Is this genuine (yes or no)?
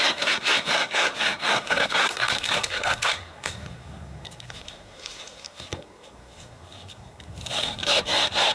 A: no